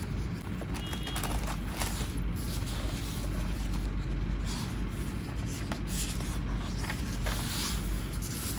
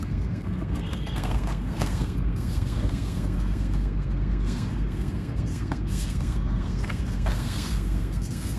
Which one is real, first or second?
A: first